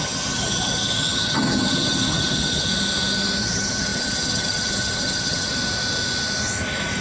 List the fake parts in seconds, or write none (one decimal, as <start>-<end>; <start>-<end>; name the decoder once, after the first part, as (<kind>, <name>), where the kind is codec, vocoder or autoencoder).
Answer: 0.0-2.7 (vocoder, HiFi-GAN); 3.4-5.5

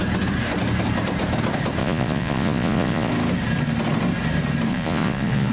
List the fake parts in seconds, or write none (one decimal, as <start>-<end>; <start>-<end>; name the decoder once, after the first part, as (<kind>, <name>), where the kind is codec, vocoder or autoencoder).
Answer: 1.8-3.1 (vocoder, Vocos); 4.7-5.5

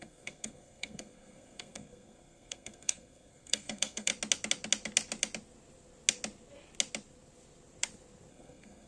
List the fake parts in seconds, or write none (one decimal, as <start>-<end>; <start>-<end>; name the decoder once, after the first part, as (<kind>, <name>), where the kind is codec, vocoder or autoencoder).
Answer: 0.0-4.1 (codec, SNAC); 8.3-8.9